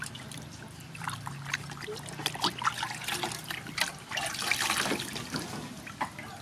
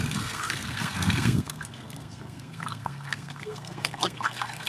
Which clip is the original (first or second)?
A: first